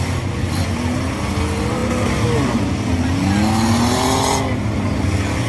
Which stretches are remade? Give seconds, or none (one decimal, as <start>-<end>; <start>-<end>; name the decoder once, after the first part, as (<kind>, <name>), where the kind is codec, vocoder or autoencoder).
none